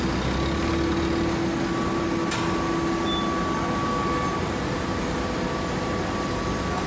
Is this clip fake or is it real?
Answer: real